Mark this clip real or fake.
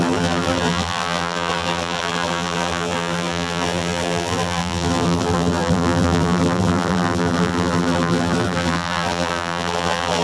fake